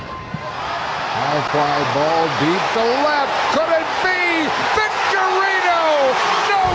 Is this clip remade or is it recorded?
recorded